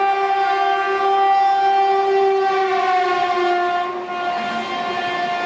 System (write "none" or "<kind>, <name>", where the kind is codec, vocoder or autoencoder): none